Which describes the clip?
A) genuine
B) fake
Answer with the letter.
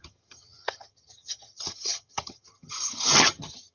B